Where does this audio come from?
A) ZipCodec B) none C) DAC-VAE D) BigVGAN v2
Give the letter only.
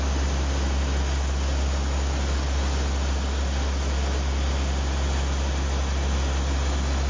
B